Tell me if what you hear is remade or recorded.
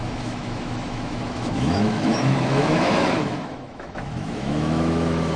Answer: remade